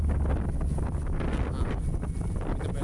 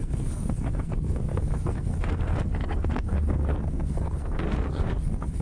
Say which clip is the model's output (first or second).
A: second